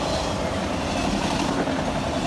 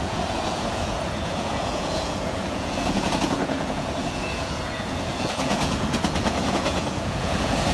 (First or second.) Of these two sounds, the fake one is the second